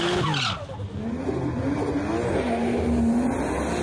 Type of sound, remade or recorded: recorded